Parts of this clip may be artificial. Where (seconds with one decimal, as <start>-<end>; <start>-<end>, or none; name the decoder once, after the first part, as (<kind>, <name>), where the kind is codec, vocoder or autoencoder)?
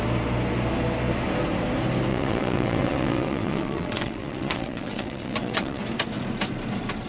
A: 2.1-5.8 (vocoder, WaveNeXt)